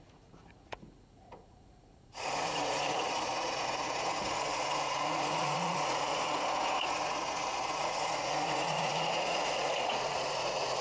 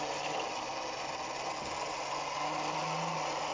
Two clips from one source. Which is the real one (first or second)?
second